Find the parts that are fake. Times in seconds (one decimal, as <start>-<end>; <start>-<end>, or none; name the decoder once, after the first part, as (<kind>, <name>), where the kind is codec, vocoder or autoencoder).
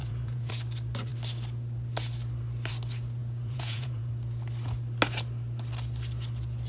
0.0-0.5 (vocoder, Vocos); 3.2-4.1